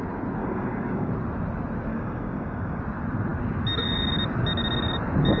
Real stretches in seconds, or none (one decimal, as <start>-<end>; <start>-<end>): 0.0-0.4; 1.1-1.9; 2.8-5.4